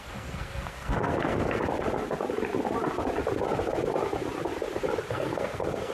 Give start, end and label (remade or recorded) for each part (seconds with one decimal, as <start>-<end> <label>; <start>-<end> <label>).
0.0-1.6 remade; 1.6-5.1 recorded; 5.1-5.9 remade